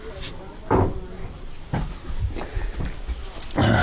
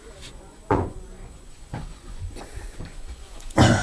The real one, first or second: first